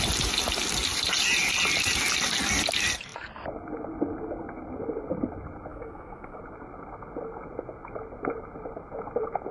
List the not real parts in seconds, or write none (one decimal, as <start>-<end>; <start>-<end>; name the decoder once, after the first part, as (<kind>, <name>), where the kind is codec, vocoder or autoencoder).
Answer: 5.7-6.4 (autoencoder, DAC-VAE)